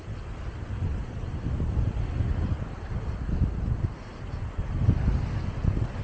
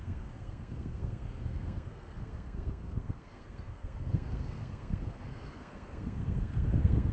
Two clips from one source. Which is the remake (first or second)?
second